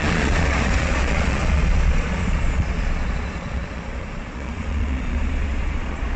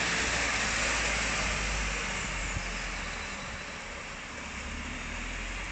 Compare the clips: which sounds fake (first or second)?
first